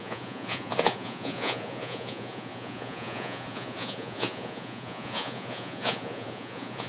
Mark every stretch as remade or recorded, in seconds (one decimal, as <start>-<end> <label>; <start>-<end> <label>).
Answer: 0.0-6.9 remade